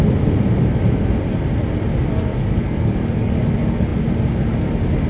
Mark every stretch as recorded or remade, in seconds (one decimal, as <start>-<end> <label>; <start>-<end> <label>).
0.0-2.3 recorded; 2.3-3.4 remade; 3.4-5.1 recorded